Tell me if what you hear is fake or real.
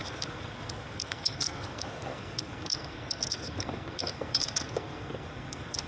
fake